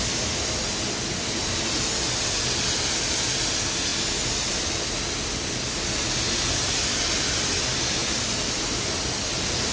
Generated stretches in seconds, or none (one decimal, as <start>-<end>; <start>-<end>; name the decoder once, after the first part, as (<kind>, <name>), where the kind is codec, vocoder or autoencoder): 3.9-4.7 (vocoder, BigVGAN v2); 8.0-9.7